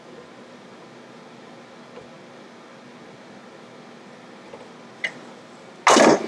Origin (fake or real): real